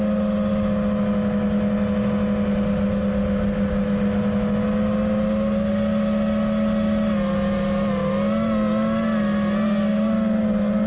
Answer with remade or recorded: recorded